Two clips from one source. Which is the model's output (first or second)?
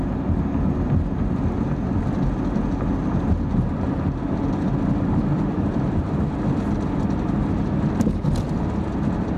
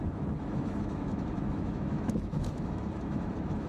second